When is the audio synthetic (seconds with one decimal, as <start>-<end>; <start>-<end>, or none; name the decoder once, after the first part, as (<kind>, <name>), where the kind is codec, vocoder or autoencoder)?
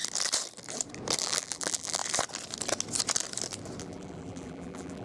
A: 1.2-2.0 (vocoder, BigVGAN v2); 3.8-5.0